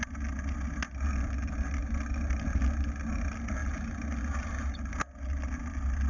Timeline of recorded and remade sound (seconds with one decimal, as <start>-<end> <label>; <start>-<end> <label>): 0.0-6.1 recorded